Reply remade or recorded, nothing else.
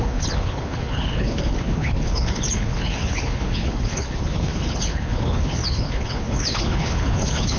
remade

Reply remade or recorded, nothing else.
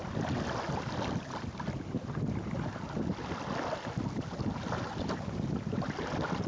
recorded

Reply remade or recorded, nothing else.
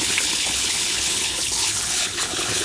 remade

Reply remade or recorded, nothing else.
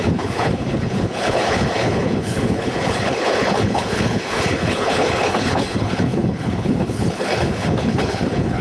remade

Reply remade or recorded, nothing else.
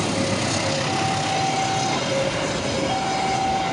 recorded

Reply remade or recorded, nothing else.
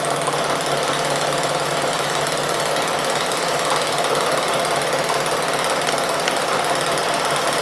recorded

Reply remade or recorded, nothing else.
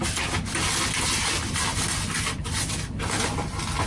recorded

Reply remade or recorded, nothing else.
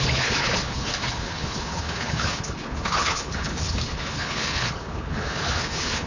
remade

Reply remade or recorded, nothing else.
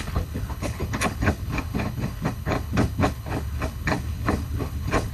remade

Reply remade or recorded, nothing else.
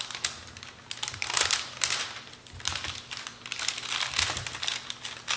recorded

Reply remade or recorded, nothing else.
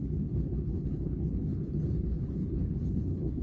remade